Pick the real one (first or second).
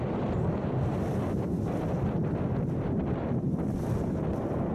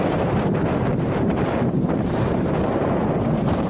first